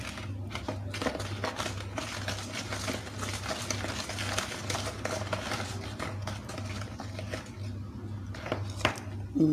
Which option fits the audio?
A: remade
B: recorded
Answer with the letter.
B